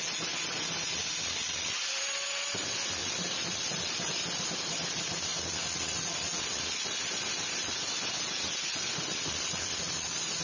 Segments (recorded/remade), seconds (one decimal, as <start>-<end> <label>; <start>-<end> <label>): 0.0-10.4 recorded